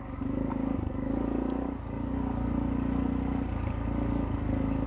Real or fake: fake